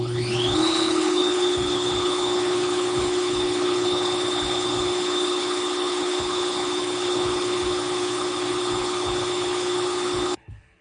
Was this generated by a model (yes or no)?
yes